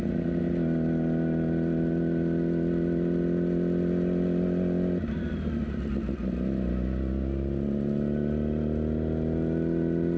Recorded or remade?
recorded